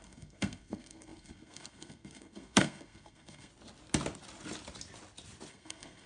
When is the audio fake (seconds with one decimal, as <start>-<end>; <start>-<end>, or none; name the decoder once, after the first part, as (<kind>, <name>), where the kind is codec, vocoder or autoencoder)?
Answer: 0.0-3.5 (codec, SNAC); 5.5-6.1